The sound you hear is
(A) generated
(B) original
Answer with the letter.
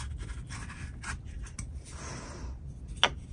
B